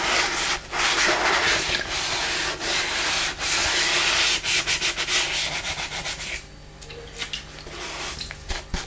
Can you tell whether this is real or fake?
real